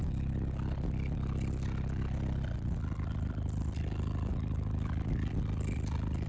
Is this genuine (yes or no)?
yes